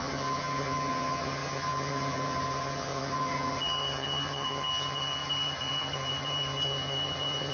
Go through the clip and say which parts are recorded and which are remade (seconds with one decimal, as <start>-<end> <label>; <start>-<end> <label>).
0.0-7.5 remade